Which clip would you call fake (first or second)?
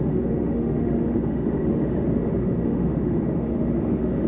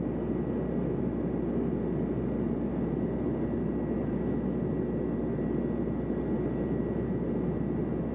first